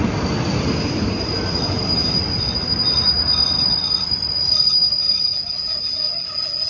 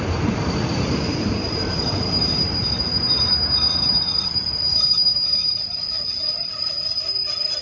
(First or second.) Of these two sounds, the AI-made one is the second